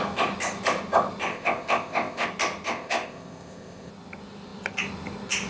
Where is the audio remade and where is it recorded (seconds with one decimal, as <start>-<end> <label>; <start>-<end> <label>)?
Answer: 0.0-1.3 recorded; 1.3-2.3 remade; 2.3-2.7 recorded; 2.7-3.9 remade; 3.9-5.5 recorded